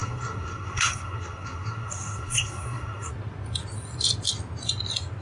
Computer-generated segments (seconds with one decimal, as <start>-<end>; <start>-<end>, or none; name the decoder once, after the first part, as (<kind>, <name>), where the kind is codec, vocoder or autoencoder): 0.0-3.1 (codec, SNAC)